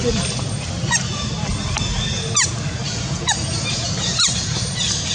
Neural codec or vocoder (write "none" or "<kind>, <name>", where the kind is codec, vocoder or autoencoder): none